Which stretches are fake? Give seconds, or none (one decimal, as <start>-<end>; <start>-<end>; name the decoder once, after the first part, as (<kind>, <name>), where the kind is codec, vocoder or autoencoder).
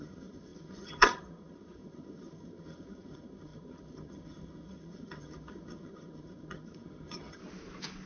0.0-7.4 (vocoder, HiFi-GAN)